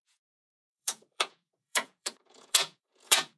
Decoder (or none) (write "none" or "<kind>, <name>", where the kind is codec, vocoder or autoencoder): vocoder, Vocos